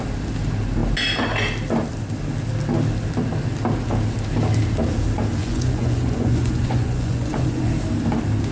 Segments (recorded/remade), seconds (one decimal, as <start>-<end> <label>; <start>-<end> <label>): 0.0-5.4 recorded; 5.4-7.7 remade; 7.7-8.5 recorded